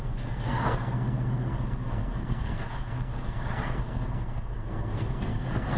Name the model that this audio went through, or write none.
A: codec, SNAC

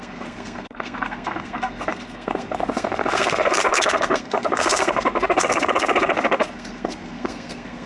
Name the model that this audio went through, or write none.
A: codec, SNAC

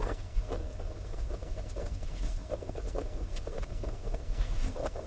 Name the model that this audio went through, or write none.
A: codec, SNAC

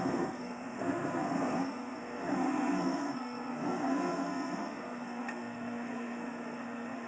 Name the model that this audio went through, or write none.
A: codec, SNAC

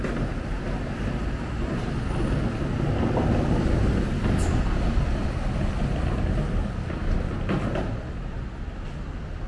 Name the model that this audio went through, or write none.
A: none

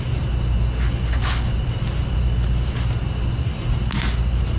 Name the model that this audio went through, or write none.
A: none